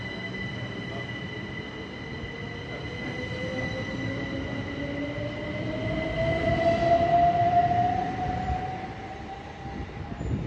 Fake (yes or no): no